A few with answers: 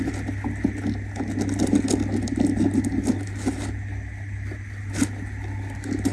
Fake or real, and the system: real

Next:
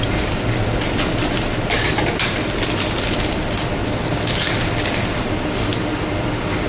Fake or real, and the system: real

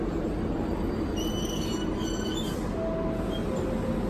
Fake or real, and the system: real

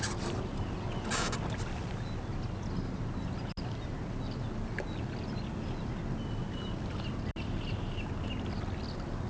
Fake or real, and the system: real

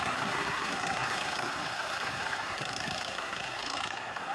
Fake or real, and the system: fake, codec, SNAC